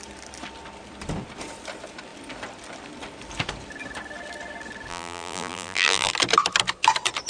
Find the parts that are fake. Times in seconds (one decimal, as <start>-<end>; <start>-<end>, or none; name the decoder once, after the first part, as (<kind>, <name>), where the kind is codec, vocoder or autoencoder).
4.9-6.1 (vocoder, BigVGAN v2)